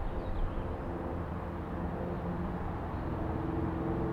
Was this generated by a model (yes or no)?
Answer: no